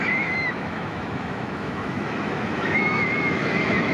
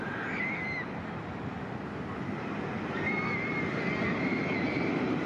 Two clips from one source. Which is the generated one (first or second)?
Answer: first